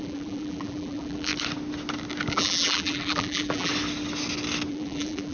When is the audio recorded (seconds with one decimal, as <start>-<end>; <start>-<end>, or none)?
1.3-2.3; 3.7-4.7